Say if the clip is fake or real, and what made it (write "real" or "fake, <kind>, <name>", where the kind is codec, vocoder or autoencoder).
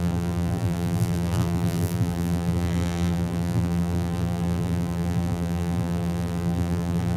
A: fake, vocoder, BigVGAN v2